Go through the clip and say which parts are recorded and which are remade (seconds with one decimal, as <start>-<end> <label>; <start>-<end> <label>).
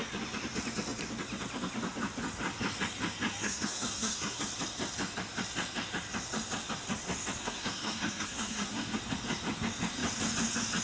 0.0-3.4 recorded; 3.4-4.4 remade; 4.4-7.4 recorded; 7.4-9.0 remade; 9.0-10.8 recorded